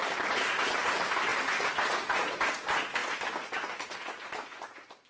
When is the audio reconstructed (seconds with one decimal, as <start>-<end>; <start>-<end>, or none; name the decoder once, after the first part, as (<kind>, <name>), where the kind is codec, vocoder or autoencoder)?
none